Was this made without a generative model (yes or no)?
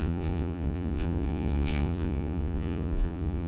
no